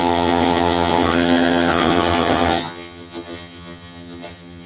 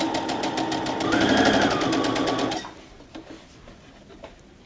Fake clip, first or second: first